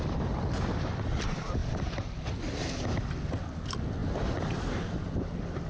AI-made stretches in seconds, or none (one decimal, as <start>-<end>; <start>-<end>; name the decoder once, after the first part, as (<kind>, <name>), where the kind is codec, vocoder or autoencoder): none